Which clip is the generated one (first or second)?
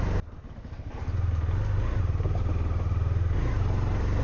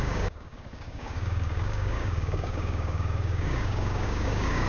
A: second